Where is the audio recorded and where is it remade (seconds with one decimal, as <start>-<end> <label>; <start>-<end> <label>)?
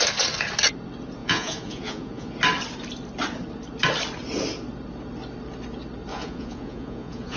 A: 0.0-1.2 recorded; 1.2-2.3 remade; 2.3-6.1 recorded; 6.1-7.4 remade